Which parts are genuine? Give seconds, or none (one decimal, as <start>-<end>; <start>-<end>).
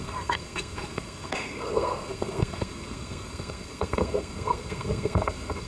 none